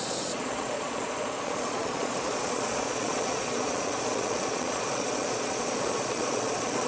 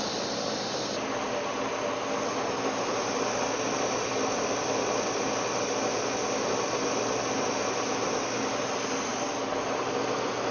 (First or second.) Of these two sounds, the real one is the second